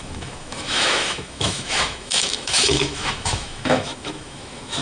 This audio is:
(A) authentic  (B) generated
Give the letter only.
B